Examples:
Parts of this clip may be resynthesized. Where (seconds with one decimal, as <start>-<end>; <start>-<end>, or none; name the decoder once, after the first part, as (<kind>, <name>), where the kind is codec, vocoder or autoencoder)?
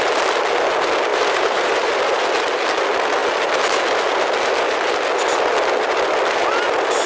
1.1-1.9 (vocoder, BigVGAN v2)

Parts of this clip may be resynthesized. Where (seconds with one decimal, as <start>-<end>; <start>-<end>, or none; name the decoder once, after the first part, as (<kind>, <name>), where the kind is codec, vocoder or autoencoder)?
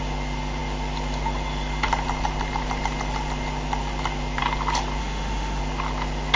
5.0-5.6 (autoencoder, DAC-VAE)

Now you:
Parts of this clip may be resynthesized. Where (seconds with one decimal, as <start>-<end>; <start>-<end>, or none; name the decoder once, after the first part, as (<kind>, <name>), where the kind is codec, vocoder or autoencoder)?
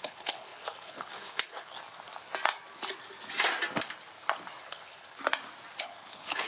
0.0-1.7 (codec, HILCodec); 4.6-5.2; 5.8-6.5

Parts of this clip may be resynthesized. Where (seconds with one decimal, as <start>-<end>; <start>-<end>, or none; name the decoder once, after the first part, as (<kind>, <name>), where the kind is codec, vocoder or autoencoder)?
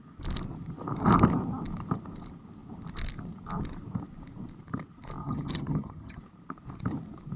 5.2-6.2 (vocoder, HiFi-GAN)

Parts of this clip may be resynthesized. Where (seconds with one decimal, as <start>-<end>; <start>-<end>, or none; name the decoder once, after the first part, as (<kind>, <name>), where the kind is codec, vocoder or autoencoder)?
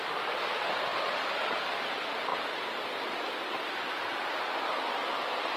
none